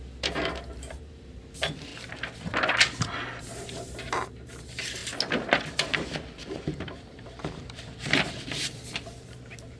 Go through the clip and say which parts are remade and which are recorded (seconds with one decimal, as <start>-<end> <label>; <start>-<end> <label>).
0.0-1.9 remade; 1.9-3.4 recorded; 3.4-5.0 remade; 5.0-6.5 recorded; 6.5-9.8 remade